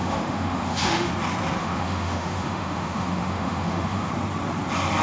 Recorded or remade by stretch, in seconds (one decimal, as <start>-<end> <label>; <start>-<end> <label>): 0.0-1.1 remade; 1.1-1.6 recorded; 1.6-4.1 remade; 4.1-5.0 recorded